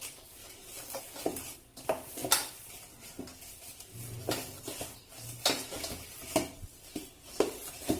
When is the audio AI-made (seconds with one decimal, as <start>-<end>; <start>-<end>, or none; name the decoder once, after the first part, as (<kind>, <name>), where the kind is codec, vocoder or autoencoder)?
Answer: none